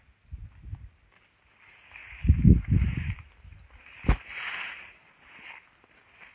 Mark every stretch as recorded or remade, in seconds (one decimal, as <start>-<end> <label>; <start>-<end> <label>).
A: 0.0-6.3 recorded